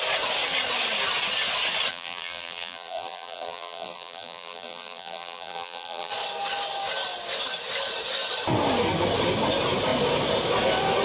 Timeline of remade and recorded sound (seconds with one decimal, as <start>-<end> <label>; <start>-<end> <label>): 0.0-1.9 recorded; 1.9-6.1 remade; 6.1-11.0 recorded